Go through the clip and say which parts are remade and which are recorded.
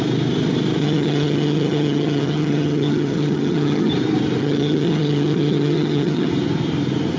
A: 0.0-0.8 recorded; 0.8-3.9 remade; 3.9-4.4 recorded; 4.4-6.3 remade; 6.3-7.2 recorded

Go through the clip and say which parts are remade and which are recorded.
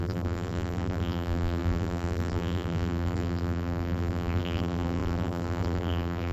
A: 0.0-6.3 remade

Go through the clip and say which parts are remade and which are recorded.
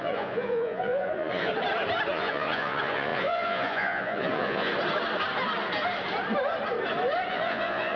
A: 0.0-1.5 remade; 1.5-2.1 recorded; 2.1-4.7 remade; 4.7-7.3 recorded; 7.3-8.0 remade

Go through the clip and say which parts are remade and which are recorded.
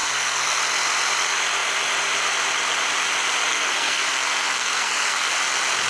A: 0.0-0.6 remade; 0.6-3.5 recorded; 3.5-5.3 remade; 5.3-5.9 recorded